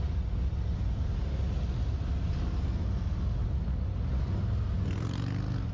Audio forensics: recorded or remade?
recorded